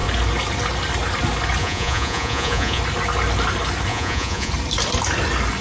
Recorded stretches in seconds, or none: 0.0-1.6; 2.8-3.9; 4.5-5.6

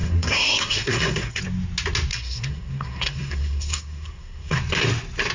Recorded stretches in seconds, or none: 1.4-2.1; 4.6-5.3

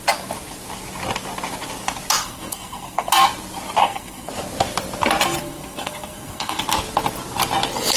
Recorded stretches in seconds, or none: 0.0-2.2; 3.1-3.8; 4.3-5.4; 6.6-8.0

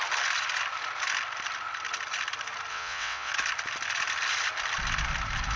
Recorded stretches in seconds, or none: 0.0-2.7; 3.3-5.6